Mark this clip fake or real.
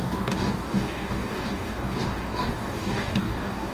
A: fake